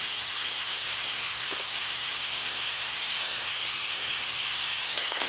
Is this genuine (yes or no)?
no